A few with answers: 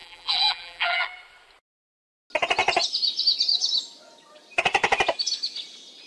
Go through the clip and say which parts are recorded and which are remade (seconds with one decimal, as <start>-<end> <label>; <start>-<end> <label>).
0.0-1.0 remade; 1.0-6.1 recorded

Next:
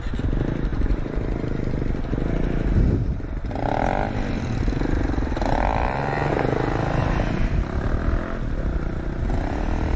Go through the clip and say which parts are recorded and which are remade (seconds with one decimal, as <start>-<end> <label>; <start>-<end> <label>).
0.0-0.7 recorded; 0.7-1.7 remade; 1.7-7.0 recorded; 7.0-7.6 remade; 7.6-10.0 recorded

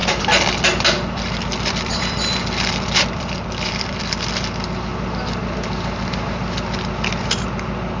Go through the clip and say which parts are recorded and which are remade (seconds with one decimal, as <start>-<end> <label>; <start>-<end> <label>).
0.0-4.1 remade; 4.1-8.0 recorded